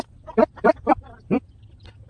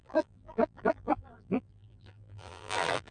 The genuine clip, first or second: first